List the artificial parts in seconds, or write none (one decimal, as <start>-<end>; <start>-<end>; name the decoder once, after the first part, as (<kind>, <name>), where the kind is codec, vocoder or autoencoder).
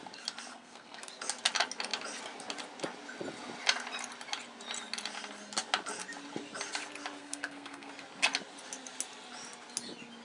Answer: 0.5-1.1 (codec, SNAC); 7.2-7.9